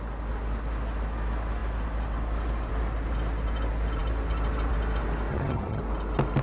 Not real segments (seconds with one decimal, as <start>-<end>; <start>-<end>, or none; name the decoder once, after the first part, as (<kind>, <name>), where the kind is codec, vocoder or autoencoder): 5.3-5.8 (vocoder, HiFi-GAN)